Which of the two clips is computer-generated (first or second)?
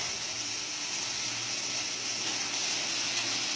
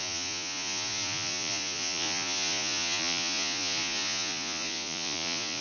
second